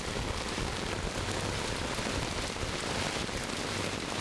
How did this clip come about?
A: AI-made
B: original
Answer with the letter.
B